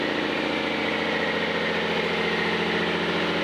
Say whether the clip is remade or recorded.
recorded